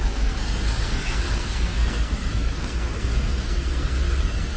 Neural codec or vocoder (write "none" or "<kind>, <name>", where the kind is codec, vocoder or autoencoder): codec, SNAC